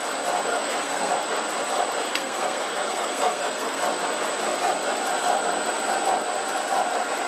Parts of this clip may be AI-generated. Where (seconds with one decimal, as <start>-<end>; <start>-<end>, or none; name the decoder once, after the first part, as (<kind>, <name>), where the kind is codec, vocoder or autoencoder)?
0.5-1.1 (codec, SNAC); 2.1-3.8

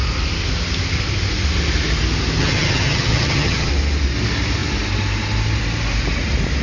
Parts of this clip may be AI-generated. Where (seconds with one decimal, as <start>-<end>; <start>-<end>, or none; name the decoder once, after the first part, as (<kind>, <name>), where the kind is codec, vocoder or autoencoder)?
2.4-3.7 (vocoder, HiFi-GAN)

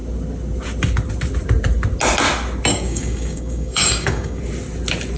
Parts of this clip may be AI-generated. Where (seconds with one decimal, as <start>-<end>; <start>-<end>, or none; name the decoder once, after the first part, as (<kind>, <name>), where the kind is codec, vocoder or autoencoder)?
2.7-4.4 (codec, DAC)

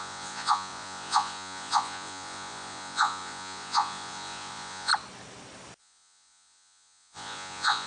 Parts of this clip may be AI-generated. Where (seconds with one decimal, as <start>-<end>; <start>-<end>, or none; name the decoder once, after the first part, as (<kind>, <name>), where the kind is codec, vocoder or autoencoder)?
0.0-4.9 (vocoder, Vocos); 5.8-7.9

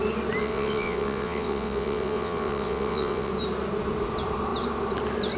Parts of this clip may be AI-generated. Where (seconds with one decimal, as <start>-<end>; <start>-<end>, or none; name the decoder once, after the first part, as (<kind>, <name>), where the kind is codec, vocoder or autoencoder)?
0.4-3.3 (vocoder, WaveNeXt)

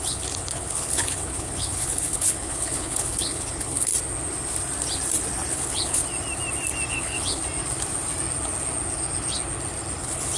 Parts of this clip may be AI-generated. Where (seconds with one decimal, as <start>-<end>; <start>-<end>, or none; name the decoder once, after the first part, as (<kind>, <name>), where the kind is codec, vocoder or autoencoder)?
0.0-3.9 (codec, HILCodec); 5.5-6.0; 6.9-7.4; 10.0-10.4